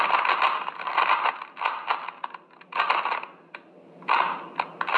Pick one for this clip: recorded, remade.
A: recorded